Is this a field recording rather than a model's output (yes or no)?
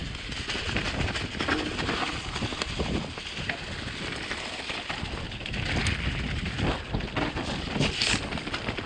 yes